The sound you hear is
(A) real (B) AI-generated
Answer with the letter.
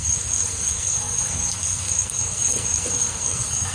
B